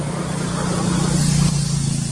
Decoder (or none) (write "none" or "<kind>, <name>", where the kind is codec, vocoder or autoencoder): none